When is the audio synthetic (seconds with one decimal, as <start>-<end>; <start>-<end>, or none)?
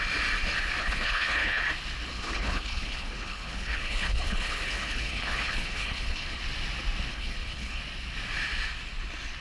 0.8-1.6; 2.1-6.4; 7.1-7.8